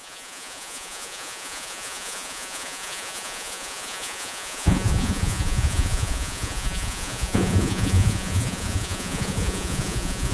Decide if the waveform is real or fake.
fake